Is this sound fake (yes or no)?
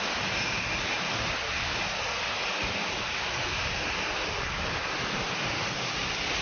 no